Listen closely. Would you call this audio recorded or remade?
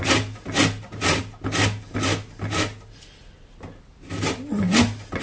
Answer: recorded